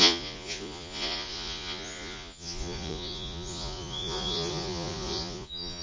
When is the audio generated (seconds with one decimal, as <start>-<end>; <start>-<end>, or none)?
0.0-5.8